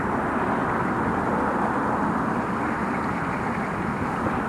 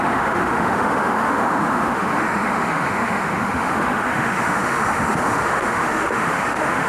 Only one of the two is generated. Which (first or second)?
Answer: second